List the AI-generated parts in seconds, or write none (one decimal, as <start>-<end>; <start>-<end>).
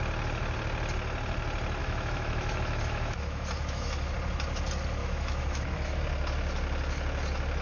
1.8-4.1; 5.0-6.0